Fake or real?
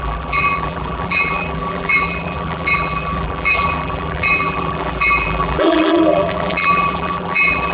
fake